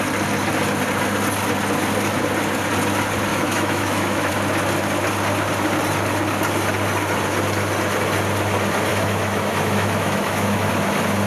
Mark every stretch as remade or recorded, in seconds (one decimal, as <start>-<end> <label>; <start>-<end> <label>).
0.0-3.3 recorded; 3.3-4.3 remade; 4.3-8.9 recorded; 8.9-10.7 remade; 10.7-11.3 recorded